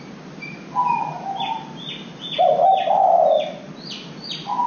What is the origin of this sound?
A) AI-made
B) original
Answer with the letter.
B